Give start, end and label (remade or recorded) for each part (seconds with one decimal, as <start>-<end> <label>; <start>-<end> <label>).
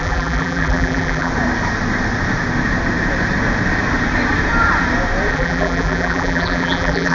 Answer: 0.0-1.3 remade; 1.3-5.3 recorded; 5.3-7.1 remade